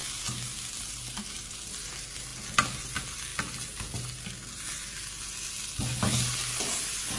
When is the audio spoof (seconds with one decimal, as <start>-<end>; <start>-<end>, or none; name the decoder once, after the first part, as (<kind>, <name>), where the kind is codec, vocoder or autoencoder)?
none